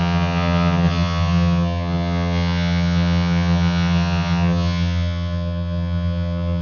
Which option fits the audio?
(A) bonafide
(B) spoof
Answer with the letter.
B